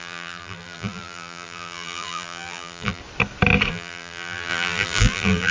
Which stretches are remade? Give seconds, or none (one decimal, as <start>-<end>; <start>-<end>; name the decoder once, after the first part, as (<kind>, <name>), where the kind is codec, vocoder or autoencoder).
0.0-3.0 (vocoder, BigVGAN v2); 3.7-5.5